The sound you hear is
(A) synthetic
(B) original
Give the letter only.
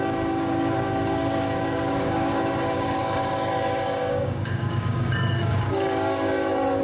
A